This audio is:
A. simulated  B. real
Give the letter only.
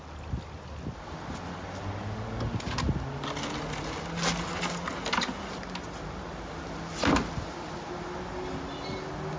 B